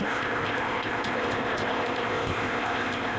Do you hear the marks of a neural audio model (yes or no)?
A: yes